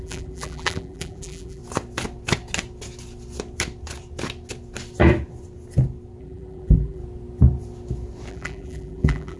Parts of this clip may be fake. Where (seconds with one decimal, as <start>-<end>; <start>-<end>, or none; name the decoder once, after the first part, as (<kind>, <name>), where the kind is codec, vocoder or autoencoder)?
0.0-1.6 (vocoder, BigVGAN v2); 6.2-7.0; 8.3-9.4